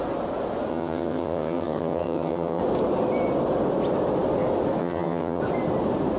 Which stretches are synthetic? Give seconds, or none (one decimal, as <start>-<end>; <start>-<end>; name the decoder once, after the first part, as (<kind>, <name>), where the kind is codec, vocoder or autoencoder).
0.7-2.6 (vocoder, HiFi-GAN); 4.8-5.4